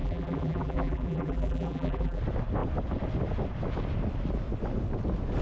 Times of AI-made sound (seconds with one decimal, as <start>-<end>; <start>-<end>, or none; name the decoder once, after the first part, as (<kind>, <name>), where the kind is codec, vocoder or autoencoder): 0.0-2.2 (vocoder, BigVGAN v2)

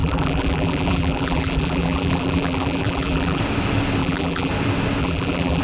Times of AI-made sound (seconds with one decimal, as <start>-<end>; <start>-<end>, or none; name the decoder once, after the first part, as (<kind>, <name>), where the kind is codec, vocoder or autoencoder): 0.0-3.4 (vocoder, BigVGAN v2); 4.0-4.5; 5.0-5.6

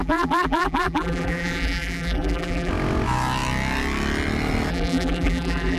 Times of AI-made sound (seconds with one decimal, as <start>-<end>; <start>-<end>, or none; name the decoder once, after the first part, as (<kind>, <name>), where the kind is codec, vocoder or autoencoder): 0.0-2.7 (vocoder, BigVGAN v2); 4.7-5.8

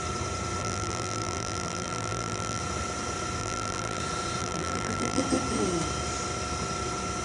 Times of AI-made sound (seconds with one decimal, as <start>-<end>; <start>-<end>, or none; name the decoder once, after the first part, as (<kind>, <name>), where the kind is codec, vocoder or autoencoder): 0.6-2.6 (vocoder, BigVGAN v2); 3.4-4.0; 4.4-5.2

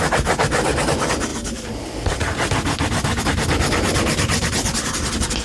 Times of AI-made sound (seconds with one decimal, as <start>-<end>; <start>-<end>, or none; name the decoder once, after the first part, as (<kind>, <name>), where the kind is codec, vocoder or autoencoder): none

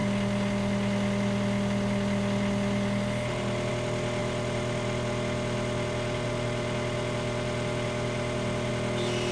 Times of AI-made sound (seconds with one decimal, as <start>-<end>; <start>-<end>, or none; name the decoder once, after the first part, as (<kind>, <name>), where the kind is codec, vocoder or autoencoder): 4.2-8.7 (vocoder, BigVGAN v2)